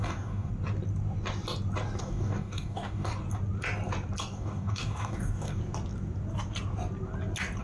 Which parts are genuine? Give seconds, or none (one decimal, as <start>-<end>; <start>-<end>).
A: 0.5-2.0; 3.1-4.2; 5.6-7.6